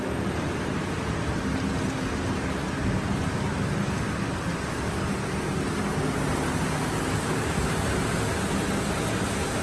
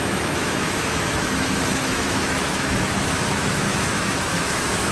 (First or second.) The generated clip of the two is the second